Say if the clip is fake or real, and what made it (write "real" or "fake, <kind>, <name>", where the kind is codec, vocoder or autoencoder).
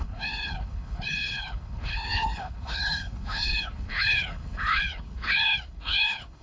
fake, codec, HILCodec